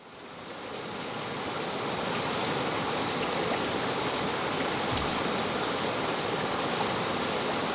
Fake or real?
real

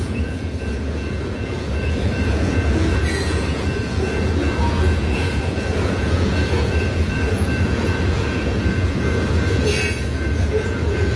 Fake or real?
fake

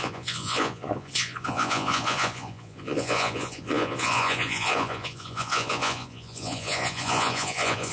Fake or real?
fake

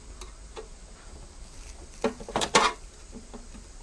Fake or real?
real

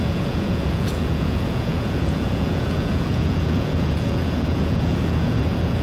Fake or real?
fake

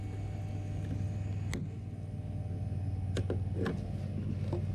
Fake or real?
real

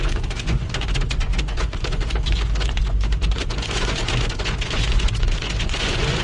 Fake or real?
fake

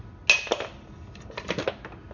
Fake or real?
real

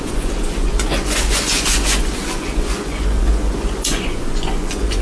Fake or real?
fake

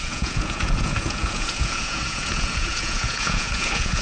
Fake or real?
fake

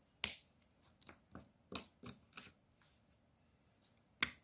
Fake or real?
real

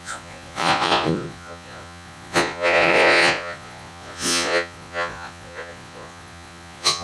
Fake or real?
fake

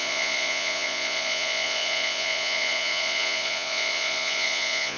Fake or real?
fake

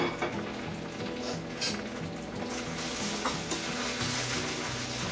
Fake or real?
real